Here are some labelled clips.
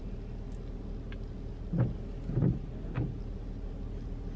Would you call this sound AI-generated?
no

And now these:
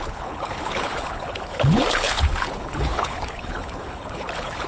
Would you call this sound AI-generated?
yes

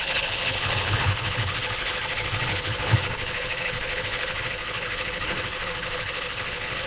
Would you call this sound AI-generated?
yes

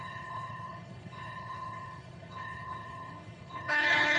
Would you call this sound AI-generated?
yes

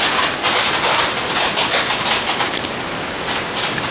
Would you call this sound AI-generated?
no